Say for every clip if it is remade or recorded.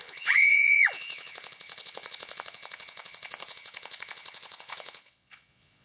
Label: remade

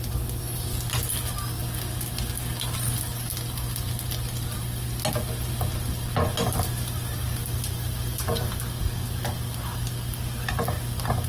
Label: recorded